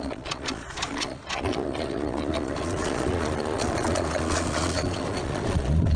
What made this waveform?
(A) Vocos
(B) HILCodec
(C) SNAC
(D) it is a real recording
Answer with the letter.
A